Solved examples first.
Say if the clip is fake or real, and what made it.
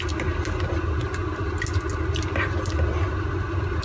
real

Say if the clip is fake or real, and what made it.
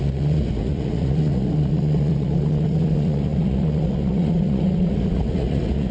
fake, vocoder, Vocos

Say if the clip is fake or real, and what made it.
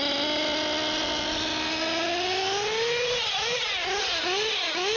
real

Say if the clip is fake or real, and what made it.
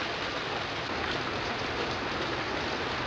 real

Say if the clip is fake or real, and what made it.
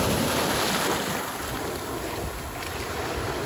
real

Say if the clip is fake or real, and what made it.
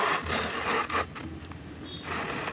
real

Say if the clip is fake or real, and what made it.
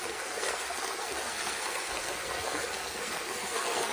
fake, codec, SNAC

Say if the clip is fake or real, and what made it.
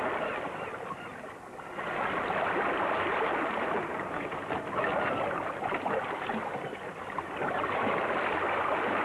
real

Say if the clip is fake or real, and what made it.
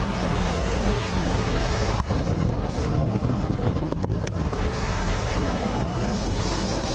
fake, codec, SNAC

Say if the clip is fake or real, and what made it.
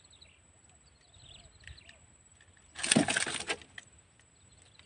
real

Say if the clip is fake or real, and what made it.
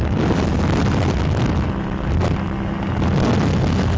real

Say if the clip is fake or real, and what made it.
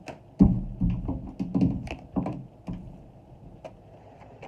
real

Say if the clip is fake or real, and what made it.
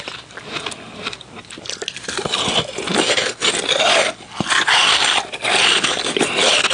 real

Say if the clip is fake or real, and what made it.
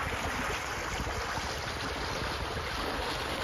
real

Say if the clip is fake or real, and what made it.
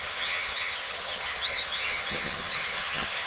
fake, vocoder, HiFi-GAN